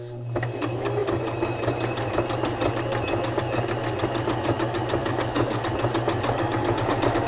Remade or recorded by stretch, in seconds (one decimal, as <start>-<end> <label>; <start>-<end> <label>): 0.0-5.0 recorded; 5.0-5.6 remade; 5.6-7.3 recorded